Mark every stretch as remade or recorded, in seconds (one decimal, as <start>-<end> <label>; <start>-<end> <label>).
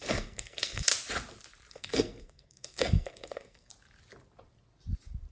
0.0-0.9 remade; 0.9-1.7 recorded; 1.7-3.7 remade; 3.7-5.3 recorded